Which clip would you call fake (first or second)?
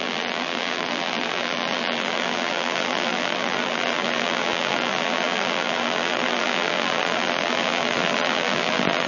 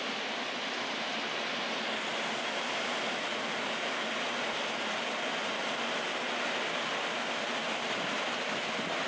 first